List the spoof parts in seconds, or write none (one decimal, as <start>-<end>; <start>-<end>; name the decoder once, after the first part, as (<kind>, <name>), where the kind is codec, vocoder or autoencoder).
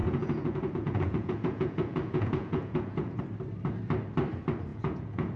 0.0-3.2 (vocoder, Vocos); 4.7-5.4